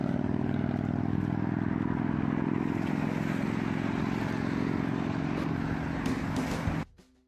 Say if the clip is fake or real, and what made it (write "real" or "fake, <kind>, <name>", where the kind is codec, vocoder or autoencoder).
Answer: real